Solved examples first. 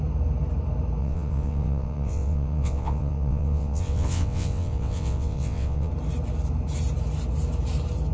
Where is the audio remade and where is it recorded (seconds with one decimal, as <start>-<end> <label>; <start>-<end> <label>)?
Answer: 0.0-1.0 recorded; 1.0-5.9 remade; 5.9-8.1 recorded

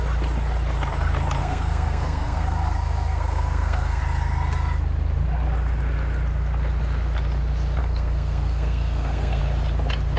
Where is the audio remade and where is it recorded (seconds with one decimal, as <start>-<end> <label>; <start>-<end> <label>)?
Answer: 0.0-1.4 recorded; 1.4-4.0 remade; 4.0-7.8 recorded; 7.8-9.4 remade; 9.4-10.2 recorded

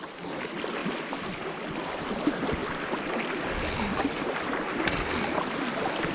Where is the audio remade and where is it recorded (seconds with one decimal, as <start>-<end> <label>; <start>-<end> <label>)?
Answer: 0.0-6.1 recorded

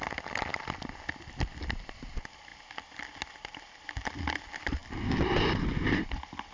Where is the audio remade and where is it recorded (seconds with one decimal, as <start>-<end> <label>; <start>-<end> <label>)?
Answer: 0.0-6.5 recorded

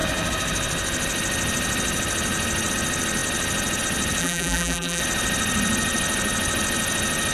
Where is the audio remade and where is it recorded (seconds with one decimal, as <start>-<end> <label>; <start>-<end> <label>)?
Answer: 0.0-4.2 recorded; 4.2-5.0 remade; 5.0-7.3 recorded

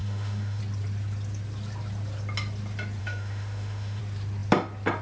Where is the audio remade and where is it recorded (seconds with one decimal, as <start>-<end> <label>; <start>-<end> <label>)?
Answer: 0.0-0.6 remade; 0.6-3.0 recorded; 3.0-4.0 remade; 4.0-5.0 recorded